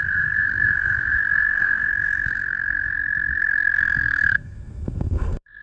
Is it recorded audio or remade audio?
remade